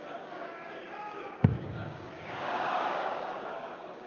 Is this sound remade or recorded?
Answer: remade